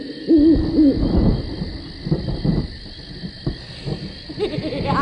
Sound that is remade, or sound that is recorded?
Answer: recorded